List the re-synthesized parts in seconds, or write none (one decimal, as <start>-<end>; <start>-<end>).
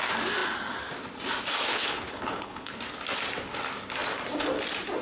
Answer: 1.7-2.8